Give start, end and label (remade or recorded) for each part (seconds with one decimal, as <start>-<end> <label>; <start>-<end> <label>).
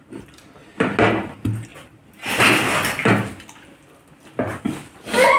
0.0-5.4 recorded